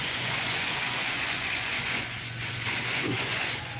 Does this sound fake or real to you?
fake